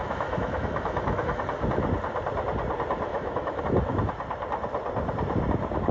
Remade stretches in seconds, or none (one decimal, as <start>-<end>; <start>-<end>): 0.0-1.4; 3.1-3.6